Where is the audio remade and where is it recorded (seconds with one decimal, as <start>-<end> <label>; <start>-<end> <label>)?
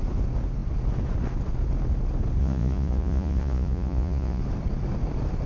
0.0-2.4 recorded; 2.4-4.4 remade; 4.4-5.5 recorded